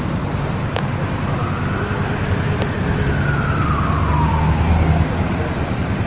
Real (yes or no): yes